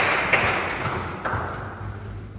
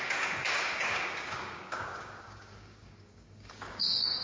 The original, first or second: first